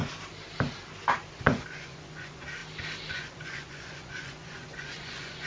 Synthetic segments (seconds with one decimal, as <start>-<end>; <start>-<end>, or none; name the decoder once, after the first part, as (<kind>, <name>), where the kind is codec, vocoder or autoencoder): 1.3-2.6 (vocoder, Vocos); 3.1-5.5